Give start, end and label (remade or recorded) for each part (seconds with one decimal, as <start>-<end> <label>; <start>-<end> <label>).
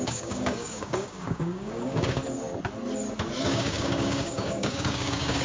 0.0-2.2 remade; 2.2-3.4 recorded; 3.4-5.4 remade